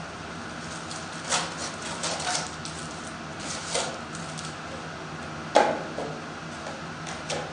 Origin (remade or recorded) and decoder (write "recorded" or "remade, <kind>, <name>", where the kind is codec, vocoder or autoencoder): recorded